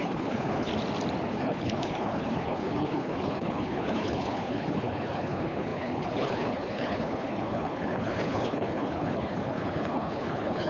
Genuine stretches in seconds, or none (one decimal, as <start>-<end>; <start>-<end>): 0.7-1.3